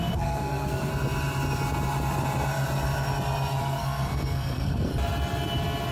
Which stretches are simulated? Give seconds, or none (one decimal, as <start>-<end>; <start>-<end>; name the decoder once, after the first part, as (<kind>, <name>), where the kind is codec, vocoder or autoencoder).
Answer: 0.0-0.9 (codec, SNAC); 3.6-4.9